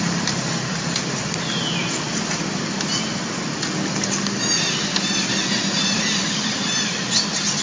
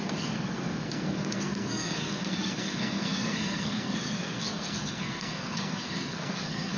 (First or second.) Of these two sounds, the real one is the first